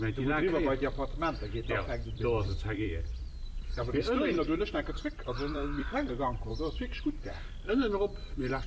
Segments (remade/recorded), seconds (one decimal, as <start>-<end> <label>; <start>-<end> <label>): 0.0-1.5 recorded; 1.5-6.5 remade; 6.5-8.7 recorded